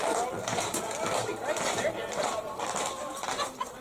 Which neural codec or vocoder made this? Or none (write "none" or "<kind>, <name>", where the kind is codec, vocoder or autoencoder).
none